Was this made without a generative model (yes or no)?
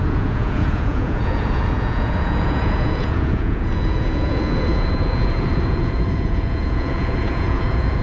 no